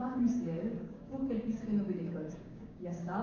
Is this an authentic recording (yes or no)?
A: no